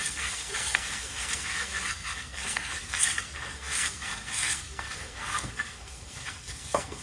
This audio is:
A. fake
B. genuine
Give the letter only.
A